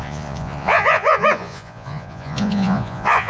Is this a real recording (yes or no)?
no